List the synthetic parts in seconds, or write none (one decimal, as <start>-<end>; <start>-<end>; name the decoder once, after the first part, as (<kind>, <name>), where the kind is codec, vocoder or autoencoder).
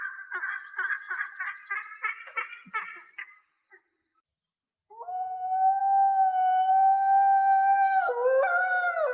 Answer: 5.8-8.1 (codec, SNAC)